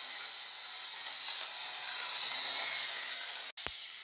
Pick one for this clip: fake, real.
real